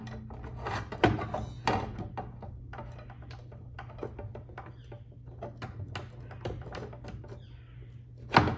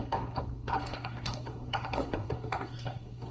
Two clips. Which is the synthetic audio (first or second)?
second